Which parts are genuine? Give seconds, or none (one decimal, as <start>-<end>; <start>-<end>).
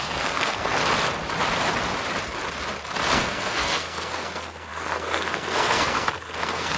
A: 0.8-3.1